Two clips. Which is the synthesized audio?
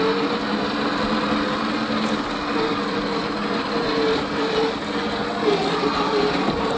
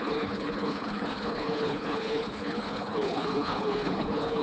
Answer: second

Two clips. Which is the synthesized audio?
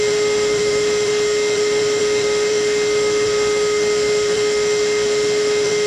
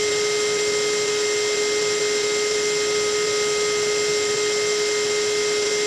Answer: first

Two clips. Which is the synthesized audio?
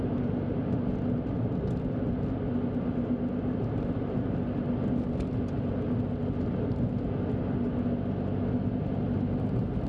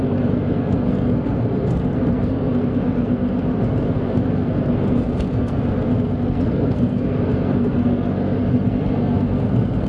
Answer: second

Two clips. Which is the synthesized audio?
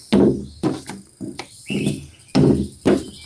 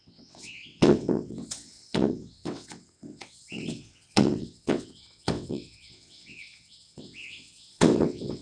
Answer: second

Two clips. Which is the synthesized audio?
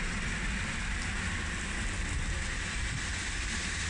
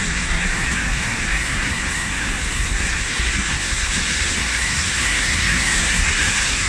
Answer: second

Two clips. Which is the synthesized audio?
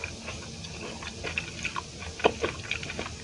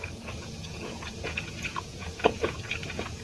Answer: second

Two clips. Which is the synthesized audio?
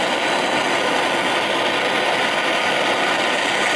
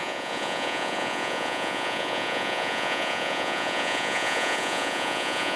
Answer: second